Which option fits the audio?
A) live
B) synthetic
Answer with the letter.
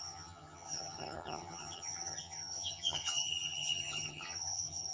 B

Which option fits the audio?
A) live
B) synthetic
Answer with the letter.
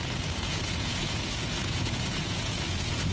B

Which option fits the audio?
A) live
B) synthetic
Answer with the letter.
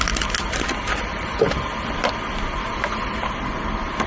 A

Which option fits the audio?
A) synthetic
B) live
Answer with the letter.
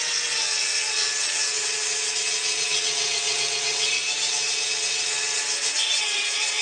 A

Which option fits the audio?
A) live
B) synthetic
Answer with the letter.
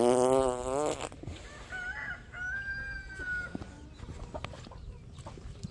A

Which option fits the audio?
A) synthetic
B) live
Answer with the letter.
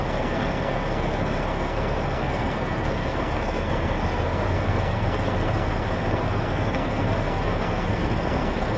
A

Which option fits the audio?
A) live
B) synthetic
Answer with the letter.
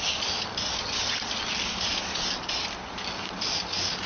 A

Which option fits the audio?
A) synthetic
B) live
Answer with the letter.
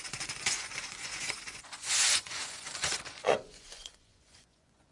A